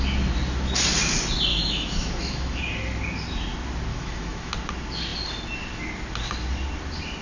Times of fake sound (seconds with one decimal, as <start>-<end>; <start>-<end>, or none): 1.5-2.6; 3.9-4.5